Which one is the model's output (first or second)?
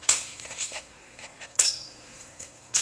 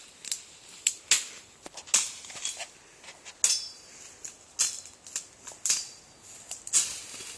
first